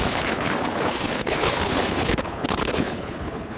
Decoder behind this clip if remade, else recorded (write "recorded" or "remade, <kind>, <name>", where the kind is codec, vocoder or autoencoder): remade, codec, HILCodec